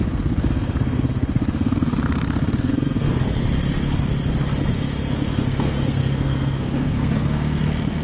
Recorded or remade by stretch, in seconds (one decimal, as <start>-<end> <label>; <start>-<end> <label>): 0.0-3.2 remade; 3.2-5.3 recorded; 5.3-7.6 remade; 7.6-8.0 recorded